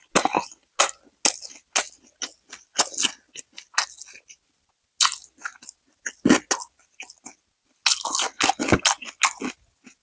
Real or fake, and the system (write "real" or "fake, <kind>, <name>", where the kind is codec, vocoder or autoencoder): real